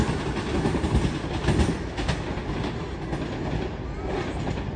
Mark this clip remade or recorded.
recorded